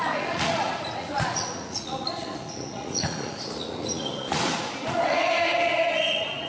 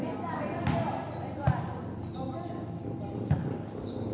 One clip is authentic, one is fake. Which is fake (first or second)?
first